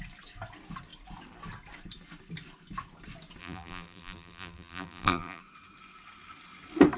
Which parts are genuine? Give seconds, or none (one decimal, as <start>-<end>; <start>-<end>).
0.0-3.4; 5.4-7.0